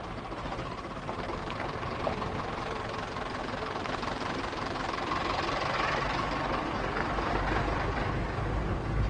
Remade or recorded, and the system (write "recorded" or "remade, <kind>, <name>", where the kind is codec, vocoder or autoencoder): remade, vocoder, BigVGAN v2